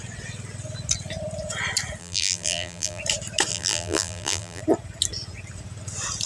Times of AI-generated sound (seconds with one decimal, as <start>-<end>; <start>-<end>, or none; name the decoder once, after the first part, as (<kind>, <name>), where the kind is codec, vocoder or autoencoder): 2.0-3.0 (vocoder, BigVGAN v2); 3.5-4.6